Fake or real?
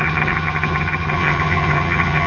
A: fake